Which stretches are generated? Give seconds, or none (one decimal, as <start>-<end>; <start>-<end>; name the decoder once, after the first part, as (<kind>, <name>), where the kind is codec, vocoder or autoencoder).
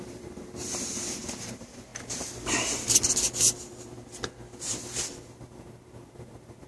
0.0-1.9 (vocoder, BigVGAN v2); 5.2-6.7